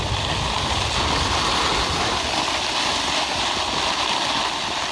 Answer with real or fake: real